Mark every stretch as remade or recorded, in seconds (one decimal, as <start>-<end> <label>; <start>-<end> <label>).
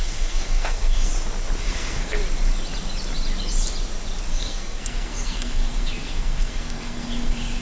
0.0-1.1 remade; 1.1-1.7 recorded; 1.7-2.2 remade; 2.2-4.3 recorded; 4.3-7.6 remade